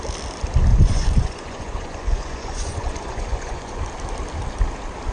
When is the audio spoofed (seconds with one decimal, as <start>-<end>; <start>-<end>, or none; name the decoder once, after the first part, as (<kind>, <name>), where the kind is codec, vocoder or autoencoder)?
0.7-3.8 (vocoder, Vocos)